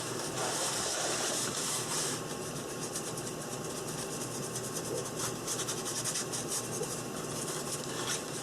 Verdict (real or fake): fake